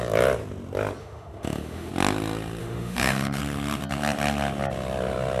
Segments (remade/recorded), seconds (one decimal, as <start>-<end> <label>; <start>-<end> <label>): 0.0-1.0 recorded; 1.0-1.9 remade; 1.9-2.6 recorded; 2.6-3.4 remade; 3.4-5.4 recorded